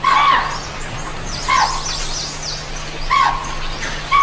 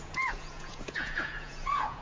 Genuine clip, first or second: first